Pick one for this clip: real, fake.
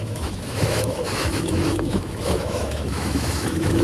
fake